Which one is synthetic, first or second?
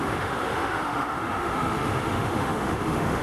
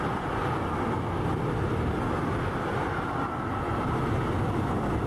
first